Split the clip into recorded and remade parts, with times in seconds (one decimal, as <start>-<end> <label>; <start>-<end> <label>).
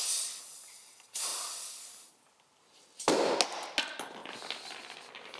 0.0-5.4 recorded